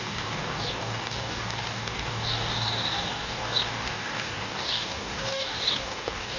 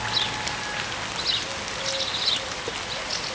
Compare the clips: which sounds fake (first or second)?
first